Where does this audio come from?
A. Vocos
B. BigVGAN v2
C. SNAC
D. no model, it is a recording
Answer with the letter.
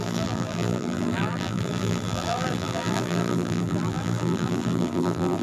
B